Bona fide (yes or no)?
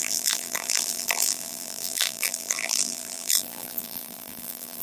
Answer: no